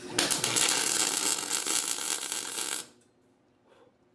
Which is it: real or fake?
real